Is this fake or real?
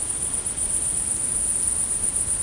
real